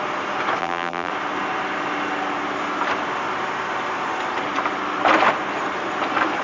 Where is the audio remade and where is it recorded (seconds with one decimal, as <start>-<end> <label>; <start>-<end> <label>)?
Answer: 0.0-0.6 recorded; 0.6-1.1 remade; 1.1-6.4 recorded